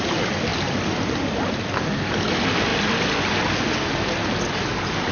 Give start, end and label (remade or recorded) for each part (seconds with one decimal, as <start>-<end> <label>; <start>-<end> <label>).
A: 0.0-0.5 recorded; 0.5-1.5 remade; 1.5-5.1 recorded